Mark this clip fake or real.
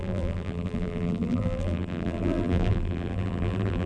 fake